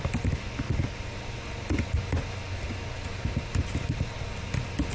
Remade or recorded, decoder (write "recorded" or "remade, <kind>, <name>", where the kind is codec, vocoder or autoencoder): recorded